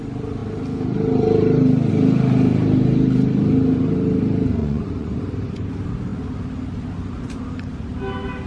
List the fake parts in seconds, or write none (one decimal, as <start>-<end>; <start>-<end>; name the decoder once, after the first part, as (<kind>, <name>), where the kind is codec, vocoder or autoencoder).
4.6-5.2 (vocoder, Vocos)